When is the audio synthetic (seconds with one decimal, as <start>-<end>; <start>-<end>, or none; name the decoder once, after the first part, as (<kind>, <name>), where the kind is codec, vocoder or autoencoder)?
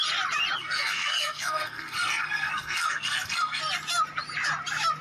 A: 0.6-3.6 (codec, SNAC)